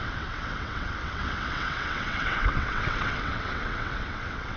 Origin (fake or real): fake